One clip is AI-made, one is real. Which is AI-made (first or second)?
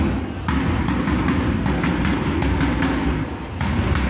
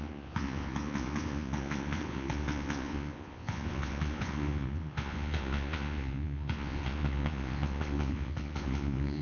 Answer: second